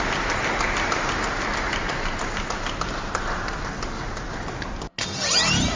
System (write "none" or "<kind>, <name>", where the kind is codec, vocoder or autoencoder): none